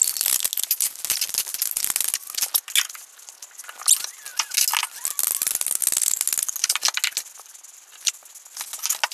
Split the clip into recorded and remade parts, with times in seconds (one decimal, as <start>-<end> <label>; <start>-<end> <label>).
0.0-9.1 recorded